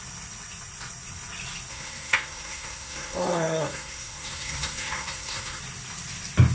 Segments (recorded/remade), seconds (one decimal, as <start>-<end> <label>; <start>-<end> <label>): 0.0-1.7 recorded; 1.7-5.6 remade; 5.6-6.5 recorded